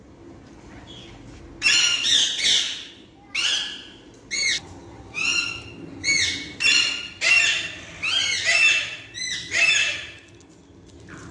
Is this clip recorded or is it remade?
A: recorded